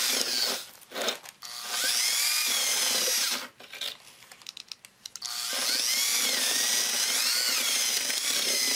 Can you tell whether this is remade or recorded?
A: recorded